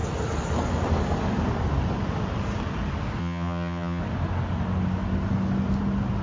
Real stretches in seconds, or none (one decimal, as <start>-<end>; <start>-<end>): 0.0-3.2; 4.0-6.2